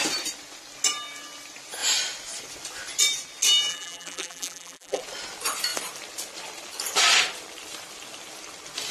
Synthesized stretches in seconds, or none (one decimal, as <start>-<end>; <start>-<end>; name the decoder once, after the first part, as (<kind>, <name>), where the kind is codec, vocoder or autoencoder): 3.7-5.0 (vocoder, BigVGAN v2)